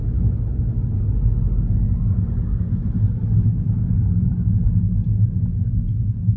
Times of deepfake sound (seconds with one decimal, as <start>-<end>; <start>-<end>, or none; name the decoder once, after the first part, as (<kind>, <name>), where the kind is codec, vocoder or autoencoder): 0.0-0.7 (codec, HILCodec); 2.5-3.9